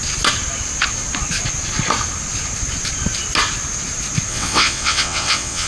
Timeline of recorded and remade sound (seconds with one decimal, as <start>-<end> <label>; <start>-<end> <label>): 0.0-4.3 recorded; 4.3-5.7 remade

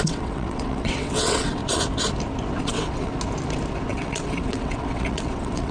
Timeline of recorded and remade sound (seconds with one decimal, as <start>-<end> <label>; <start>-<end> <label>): 0.0-1.6 remade; 1.6-2.6 recorded; 2.6-3.1 remade; 3.1-3.9 recorded; 3.9-5.7 remade

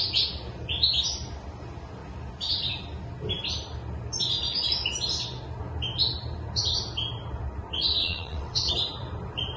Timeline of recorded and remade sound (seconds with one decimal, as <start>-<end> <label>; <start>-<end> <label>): 0.0-8.0 recorded; 8.0-8.7 remade; 8.7-9.6 recorded

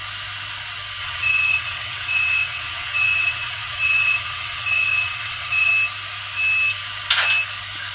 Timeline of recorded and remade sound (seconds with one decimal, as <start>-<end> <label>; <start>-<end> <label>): 0.0-1.0 recorded; 1.0-5.7 remade; 5.7-7.9 recorded

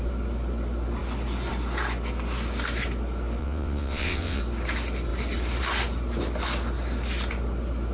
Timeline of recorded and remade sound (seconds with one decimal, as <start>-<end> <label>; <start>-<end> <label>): 0.0-3.4 recorded; 3.4-4.4 remade; 4.4-7.9 recorded

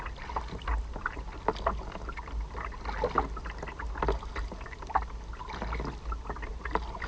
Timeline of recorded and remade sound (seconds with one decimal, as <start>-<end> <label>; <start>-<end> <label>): 0.0-7.1 recorded

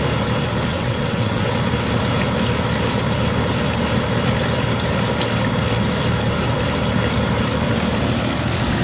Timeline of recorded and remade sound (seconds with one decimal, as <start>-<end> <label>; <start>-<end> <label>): 0.0-0.7 recorded; 0.7-1.6 remade; 1.6-8.8 recorded